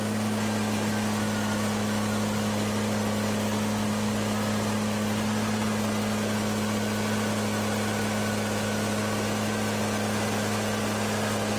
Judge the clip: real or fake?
real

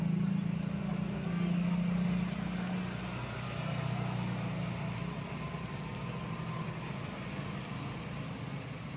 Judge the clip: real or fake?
real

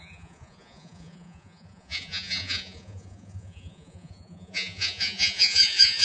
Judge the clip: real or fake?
fake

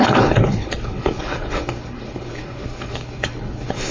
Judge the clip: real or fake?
fake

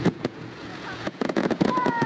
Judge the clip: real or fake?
fake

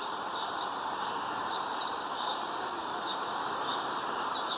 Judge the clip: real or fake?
fake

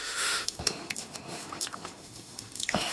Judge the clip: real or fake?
fake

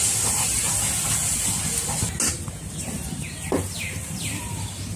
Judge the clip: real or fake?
real